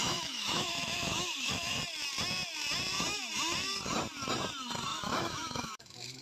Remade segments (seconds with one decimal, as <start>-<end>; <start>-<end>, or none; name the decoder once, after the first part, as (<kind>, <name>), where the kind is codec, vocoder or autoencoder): 0.0-1.8 (autoencoder, DAC-VAE); 4.9-6.2